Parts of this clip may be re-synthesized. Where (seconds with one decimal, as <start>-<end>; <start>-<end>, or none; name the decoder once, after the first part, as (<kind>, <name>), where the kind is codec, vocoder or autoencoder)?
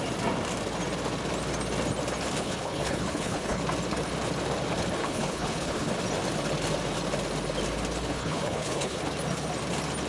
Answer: 2.4-3.6 (codec, HILCodec); 5.0-5.9; 8.1-9.0